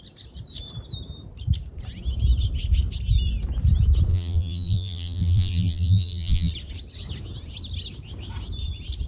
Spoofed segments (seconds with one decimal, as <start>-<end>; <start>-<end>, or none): 4.1-6.5